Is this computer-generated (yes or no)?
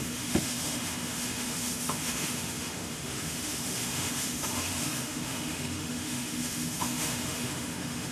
yes